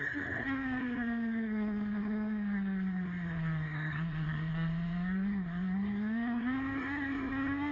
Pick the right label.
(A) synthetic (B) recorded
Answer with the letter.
A